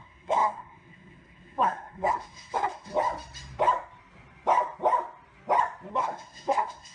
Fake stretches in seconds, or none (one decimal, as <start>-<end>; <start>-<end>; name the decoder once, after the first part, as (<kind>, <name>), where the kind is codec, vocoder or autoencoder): 0.0-2.9 (codec, SNAC); 5.9-6.9